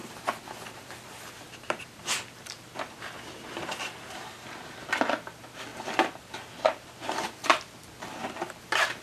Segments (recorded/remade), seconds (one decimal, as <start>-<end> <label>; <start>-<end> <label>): 0.0-4.9 remade; 4.9-5.7 recorded; 5.7-8.3 remade; 8.3-9.0 recorded